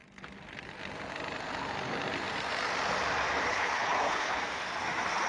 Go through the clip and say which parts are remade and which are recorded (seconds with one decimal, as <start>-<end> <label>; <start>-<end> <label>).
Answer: 0.0-3.5 recorded; 3.5-4.4 remade; 4.4-5.3 recorded